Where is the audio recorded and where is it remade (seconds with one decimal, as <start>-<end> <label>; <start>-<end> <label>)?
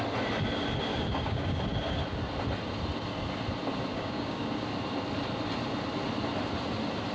0.0-0.9 recorded; 0.9-1.6 remade; 1.6-3.9 recorded; 3.9-4.5 remade; 4.5-7.1 recorded